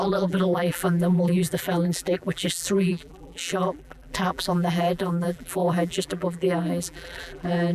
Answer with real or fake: fake